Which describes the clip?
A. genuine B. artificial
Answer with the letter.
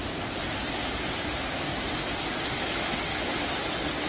A